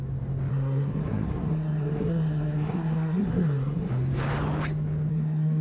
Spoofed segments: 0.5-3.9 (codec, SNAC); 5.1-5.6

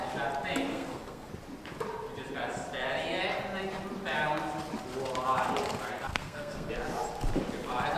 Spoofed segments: 0.7-1.3 (codec, SNAC); 6.1-6.7

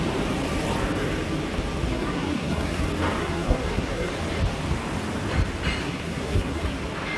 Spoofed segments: 1.9-2.8 (codec, SNAC); 3.2-4.1; 5.8-6.8